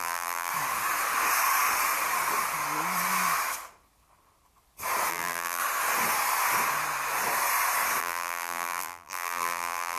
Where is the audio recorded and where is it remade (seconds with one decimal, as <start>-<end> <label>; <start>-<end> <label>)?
0.0-0.5 remade; 0.5-5.1 recorded; 5.1-5.6 remade; 5.6-8.0 recorded; 8.0-10.0 remade